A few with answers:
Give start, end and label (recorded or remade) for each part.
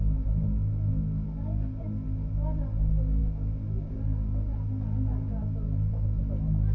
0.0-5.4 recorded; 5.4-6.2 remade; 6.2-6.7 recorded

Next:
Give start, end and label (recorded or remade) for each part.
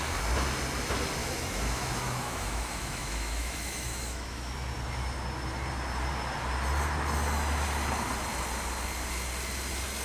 0.0-1.2 recorded; 1.2-4.5 remade; 4.5-10.0 recorded